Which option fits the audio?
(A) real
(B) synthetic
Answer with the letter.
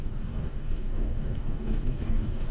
B